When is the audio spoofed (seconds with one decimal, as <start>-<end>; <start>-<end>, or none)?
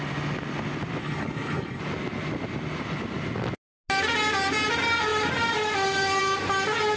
1.0-1.8